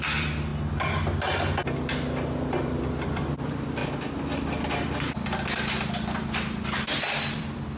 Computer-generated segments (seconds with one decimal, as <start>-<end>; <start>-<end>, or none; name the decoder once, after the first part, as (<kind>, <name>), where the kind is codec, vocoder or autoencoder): 0.0-0.5 (vocoder, BigVGAN v2); 2.5-3.8; 5.9-7.8